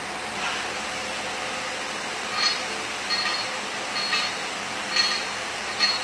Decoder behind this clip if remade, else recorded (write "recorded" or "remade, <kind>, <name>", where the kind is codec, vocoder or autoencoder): recorded